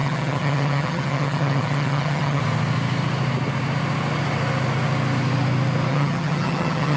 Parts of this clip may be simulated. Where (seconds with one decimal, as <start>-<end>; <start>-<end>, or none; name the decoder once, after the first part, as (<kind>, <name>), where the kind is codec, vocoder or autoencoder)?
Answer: 0.0-2.4 (vocoder, HiFi-GAN); 5.9-7.0